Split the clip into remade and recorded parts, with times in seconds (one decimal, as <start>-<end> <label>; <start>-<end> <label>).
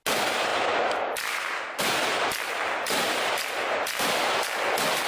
0.0-5.1 recorded